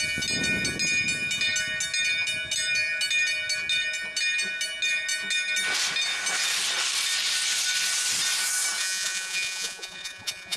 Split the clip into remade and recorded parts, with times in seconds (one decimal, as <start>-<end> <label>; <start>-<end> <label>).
0.0-8.8 recorded; 8.8-10.6 remade

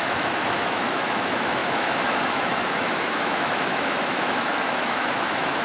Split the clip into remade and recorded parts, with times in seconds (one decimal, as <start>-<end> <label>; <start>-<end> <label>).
0.0-5.6 remade

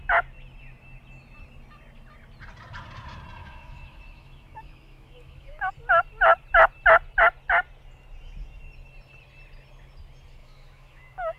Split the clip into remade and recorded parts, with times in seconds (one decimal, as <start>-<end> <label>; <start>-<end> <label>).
0.0-3.4 recorded; 3.4-5.7 remade; 5.7-10.4 recorded; 10.4-11.4 remade

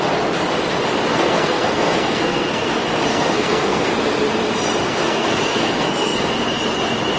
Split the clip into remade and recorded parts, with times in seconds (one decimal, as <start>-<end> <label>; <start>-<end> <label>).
0.0-1.1 recorded; 1.1-2.7 remade; 2.7-3.1 recorded; 3.1-3.9 remade; 3.9-4.8 recorded; 4.8-6.3 remade; 6.3-7.2 recorded

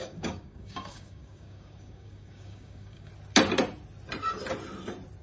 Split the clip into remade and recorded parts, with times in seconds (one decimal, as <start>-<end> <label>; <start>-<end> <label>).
0.0-3.1 remade; 3.1-5.2 recorded

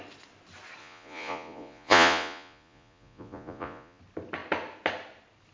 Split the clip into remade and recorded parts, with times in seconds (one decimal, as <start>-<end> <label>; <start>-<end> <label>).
0.0-0.8 recorded; 0.8-4.0 remade; 4.0-5.5 recorded